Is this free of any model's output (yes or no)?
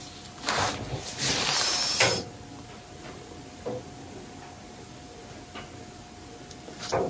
yes